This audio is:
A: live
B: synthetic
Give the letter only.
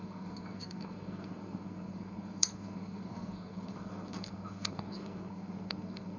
B